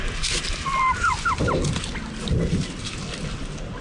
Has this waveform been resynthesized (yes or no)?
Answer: no